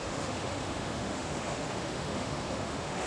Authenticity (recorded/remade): remade